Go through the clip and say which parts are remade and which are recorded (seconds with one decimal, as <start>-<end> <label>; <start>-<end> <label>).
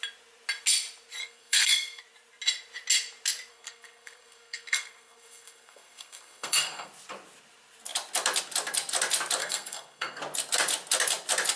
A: 0.0-1.2 recorded; 1.2-2.0 remade; 2.0-3.5 recorded; 3.5-6.9 remade; 6.9-9.4 recorded; 9.4-10.2 remade; 10.2-11.6 recorded